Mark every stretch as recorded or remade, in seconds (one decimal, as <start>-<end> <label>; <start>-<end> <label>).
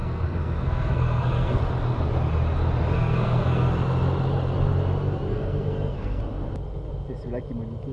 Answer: 0.0-1.6 remade; 1.6-2.9 recorded; 2.9-3.7 remade; 3.7-5.3 recorded; 5.3-6.2 remade; 6.2-7.9 recorded